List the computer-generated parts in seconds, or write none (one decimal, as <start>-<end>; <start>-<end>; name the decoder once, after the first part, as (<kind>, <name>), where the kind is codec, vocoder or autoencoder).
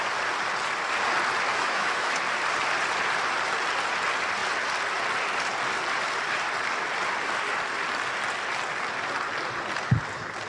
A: 1.5-2.2 (autoencoder, DAC-VAE)